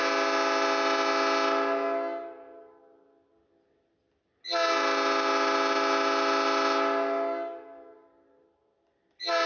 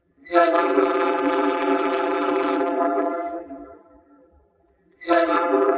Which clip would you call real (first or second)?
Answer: first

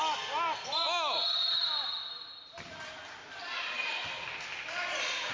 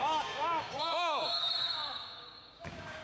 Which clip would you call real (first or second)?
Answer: first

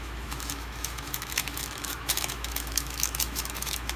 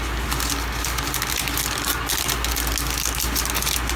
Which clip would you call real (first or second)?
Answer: second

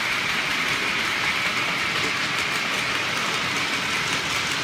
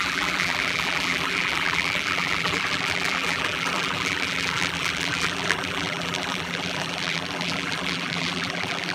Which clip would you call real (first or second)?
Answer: first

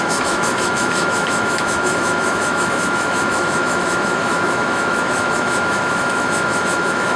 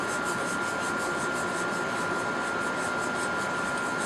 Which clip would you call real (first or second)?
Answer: second